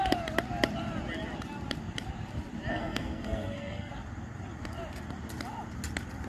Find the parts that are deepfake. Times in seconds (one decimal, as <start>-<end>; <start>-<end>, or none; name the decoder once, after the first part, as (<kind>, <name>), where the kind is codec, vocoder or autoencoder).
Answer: 2.7-3.9 (codec, SNAC)